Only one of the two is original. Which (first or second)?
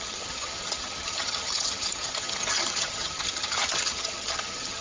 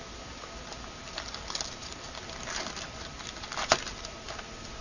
second